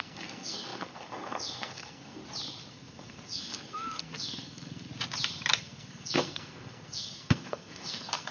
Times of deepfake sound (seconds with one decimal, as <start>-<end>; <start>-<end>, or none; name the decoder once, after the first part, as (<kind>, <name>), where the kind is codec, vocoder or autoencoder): 0.0-2.2 (codec, SNAC); 2.7-4.9; 5.6-8.3